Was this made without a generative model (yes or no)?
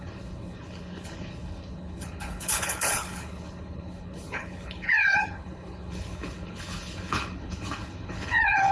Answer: no